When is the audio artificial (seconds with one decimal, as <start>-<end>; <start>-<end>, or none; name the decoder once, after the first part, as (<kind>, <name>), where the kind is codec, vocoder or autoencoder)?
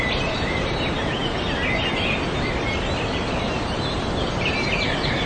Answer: none